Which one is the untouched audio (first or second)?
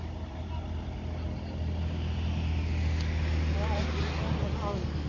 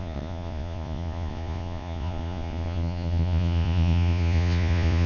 first